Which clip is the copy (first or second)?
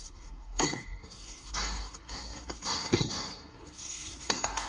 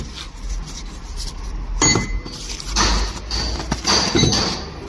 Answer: first